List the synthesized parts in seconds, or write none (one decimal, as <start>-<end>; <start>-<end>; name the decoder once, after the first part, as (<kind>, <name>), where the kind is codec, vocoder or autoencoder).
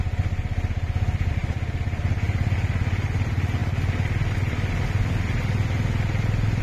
none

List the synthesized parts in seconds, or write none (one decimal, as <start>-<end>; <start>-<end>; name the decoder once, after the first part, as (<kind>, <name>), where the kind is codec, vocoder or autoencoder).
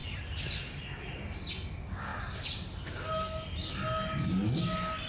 none